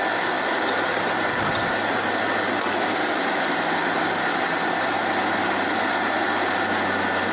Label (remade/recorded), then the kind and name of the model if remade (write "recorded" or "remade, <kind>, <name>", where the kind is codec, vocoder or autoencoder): recorded